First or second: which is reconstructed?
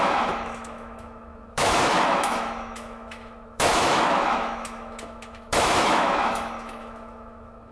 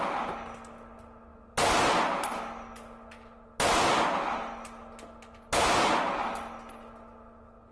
first